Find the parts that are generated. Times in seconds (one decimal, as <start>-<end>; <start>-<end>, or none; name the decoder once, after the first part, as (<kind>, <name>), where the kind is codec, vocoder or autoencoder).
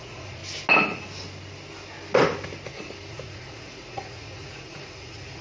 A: 0.0-0.4 (vocoder, Vocos); 3.1-5.4